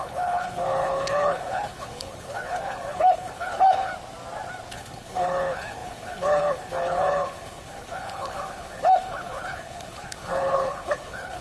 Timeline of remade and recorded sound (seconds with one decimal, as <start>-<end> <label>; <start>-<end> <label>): 0.0-3.9 remade; 3.9-4.7 recorded; 4.7-11.4 remade